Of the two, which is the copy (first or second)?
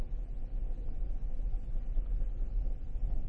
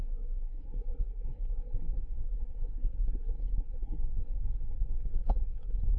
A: second